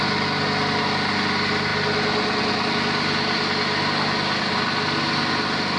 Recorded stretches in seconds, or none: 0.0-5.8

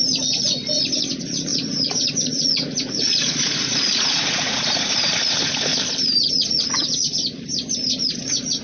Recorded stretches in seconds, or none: 5.7-6.3; 7.2-7.9